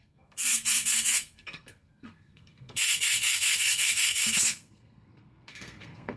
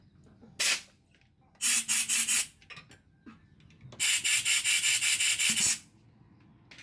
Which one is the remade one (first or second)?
first